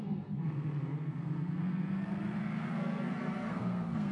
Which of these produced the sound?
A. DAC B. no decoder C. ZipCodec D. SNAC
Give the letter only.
D